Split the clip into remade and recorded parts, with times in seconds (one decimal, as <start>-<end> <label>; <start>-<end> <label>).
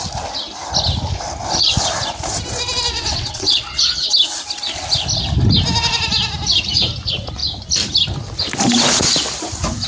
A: 0.0-2.9 recorded; 2.9-4.1 remade; 4.1-9.9 recorded